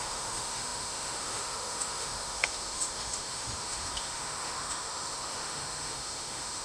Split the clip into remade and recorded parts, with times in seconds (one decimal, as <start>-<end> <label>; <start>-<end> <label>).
0.0-6.6 remade